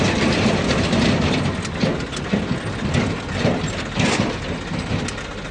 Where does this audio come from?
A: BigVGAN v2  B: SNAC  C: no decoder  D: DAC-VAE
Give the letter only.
C